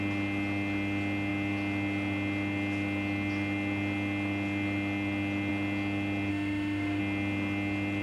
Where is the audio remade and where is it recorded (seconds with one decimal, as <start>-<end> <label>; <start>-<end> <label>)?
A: 0.0-6.3 recorded; 6.3-7.0 remade; 7.0-8.0 recorded